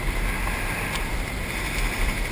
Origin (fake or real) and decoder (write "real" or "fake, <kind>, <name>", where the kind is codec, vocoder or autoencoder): real